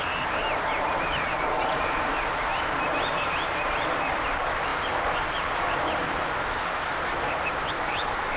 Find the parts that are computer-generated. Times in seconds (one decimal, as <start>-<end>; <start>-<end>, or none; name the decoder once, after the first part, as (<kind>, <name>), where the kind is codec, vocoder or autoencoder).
0.0-8.4 (vocoder, BigVGAN v2)